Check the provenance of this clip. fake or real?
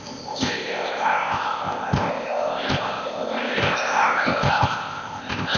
fake